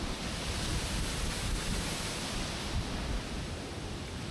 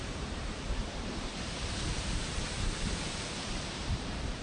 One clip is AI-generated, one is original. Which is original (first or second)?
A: first